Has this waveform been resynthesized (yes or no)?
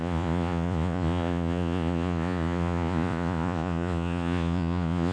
yes